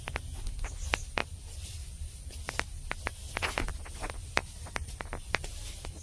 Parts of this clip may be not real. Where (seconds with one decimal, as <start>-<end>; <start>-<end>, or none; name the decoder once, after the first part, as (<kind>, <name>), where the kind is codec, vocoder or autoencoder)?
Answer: none